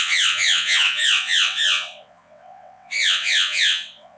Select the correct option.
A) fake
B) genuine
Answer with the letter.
A